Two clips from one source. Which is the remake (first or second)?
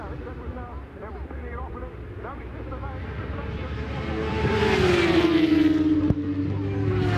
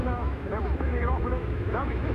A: second